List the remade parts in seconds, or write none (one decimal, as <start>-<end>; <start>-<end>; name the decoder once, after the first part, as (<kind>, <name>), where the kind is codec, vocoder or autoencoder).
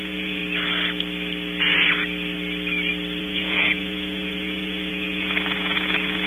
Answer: 0.0-0.4 (vocoder, Vocos); 3.2-6.3